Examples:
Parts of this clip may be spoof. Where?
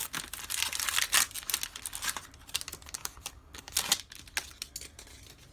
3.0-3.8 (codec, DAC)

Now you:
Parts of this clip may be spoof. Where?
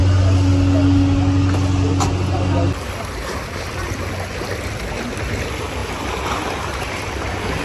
none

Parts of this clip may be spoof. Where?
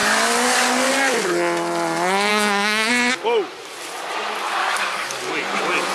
0.0-0.9 (codec, DAC); 2.3-2.9; 4.6-5.3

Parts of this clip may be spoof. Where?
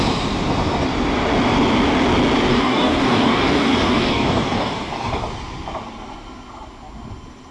2.5-5.2 (codec, DAC)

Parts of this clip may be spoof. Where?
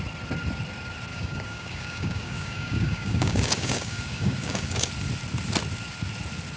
1.1-4.9 (codec, DAC)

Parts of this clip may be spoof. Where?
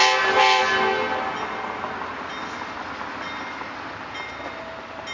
none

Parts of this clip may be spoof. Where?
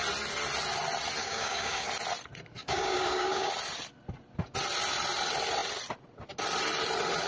1.2-1.9 (codec, DAC); 2.6-3.5